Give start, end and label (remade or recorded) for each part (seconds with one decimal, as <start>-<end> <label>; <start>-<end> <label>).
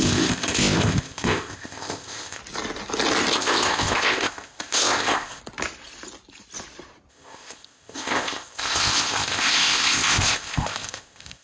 0.0-2.4 remade; 2.4-3.3 recorded; 3.3-5.4 remade; 5.4-7.1 recorded; 7.1-11.4 remade